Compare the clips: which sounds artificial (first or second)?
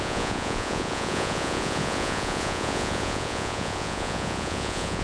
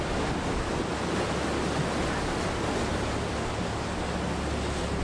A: first